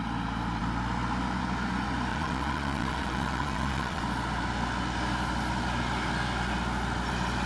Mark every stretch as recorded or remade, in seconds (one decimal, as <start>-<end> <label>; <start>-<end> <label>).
0.0-2.1 recorded; 2.1-4.0 remade; 4.0-7.5 recorded